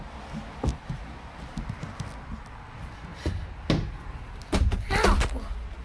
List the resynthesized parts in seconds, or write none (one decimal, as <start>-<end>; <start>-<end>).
none